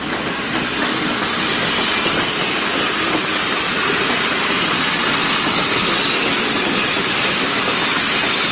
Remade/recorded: recorded